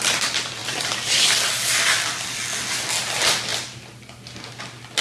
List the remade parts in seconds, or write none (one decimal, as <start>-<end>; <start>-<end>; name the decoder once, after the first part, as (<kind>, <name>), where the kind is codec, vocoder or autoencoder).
0.6-2.4 (vocoder, BigVGAN v2)